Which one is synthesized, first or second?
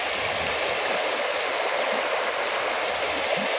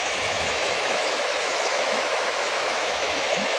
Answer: second